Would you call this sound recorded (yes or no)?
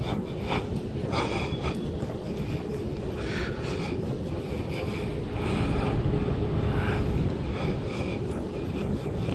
yes